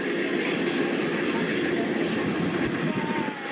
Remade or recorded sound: recorded